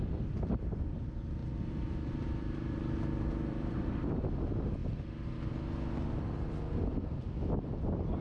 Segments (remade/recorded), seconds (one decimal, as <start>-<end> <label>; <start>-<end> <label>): 0.0-1.4 recorded; 1.4-4.1 remade; 4.1-8.2 recorded